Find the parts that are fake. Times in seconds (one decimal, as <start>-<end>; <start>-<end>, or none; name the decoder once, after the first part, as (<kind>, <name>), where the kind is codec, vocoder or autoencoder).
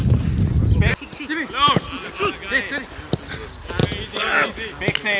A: none